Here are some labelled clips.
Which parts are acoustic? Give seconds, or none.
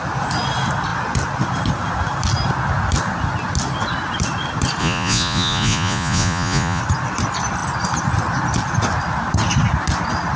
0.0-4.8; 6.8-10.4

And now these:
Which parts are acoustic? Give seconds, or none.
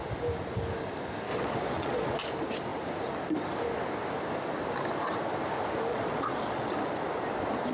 0.0-1.3; 2.2-5.9; 6.7-7.7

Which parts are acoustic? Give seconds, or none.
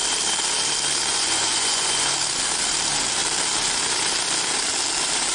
0.0-1.1; 2.1-5.3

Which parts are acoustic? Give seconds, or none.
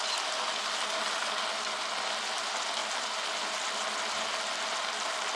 0.0-5.4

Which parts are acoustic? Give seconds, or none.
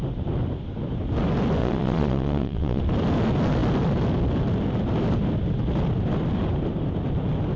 0.0-1.6; 2.8-7.6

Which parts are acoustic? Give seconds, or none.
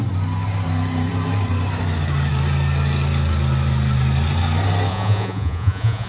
0.0-4.9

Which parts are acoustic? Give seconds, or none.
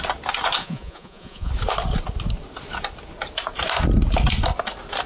0.0-0.6; 1.5-5.1